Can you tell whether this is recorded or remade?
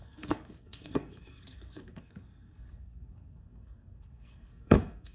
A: remade